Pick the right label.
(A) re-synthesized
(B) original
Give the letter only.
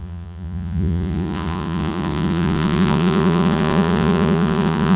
A